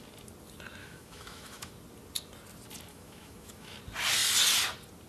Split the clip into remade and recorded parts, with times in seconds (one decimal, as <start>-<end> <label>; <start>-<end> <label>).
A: 0.0-0.8 recorded; 0.8-1.7 remade; 1.7-2.9 recorded; 2.9-3.8 remade; 3.8-5.1 recorded